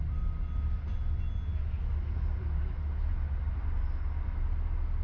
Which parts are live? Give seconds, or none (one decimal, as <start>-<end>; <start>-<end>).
0.0-5.0